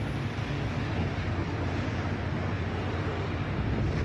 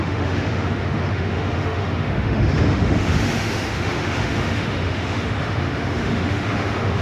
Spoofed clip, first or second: second